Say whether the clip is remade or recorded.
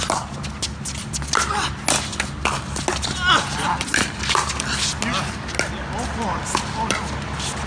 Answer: recorded